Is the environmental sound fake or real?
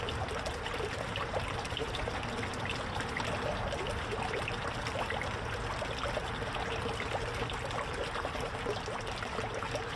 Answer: real